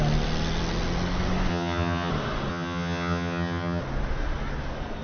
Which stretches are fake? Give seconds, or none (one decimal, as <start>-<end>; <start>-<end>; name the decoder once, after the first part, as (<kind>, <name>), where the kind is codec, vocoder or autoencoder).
1.5-2.1 (vocoder, HiFi-GAN); 2.5-3.8

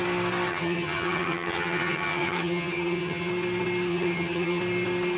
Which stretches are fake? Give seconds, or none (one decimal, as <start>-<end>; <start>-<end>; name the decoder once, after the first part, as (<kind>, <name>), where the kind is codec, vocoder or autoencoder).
0.5-3.3 (vocoder, HiFi-GAN); 3.9-4.6

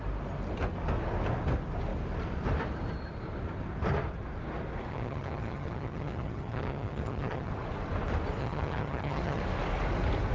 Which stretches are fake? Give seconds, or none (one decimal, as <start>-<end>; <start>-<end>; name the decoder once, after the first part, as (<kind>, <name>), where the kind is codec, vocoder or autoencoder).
4.9-7.5 (vocoder, HiFi-GAN); 8.4-9.4

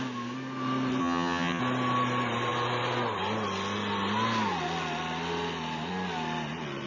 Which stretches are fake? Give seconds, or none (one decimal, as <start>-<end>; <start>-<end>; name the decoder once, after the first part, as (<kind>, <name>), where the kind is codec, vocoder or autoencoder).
1.0-1.6 (vocoder, HiFi-GAN)

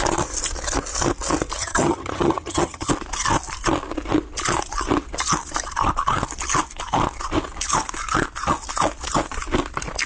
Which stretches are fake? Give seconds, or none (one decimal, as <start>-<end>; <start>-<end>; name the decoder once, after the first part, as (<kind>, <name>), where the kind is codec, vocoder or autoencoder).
1.6-2.9 (vocoder, HiFi-GAN)

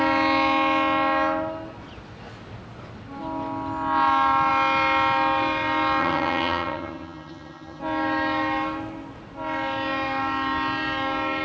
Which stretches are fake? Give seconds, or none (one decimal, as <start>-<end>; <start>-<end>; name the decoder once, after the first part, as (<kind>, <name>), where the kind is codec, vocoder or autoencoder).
6.0-7.8 (vocoder, HiFi-GAN)

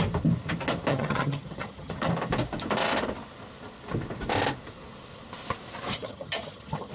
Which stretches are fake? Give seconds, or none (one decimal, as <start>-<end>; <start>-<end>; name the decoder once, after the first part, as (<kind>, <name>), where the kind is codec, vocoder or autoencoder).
0.9-2.1 (vocoder, HiFi-GAN); 5.9-6.9

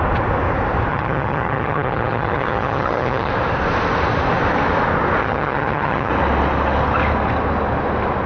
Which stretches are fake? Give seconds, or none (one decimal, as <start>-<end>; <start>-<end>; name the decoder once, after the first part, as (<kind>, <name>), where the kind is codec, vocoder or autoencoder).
0.9-3.3 (vocoder, HiFi-GAN); 5.2-6.1